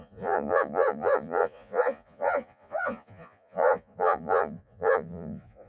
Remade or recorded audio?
remade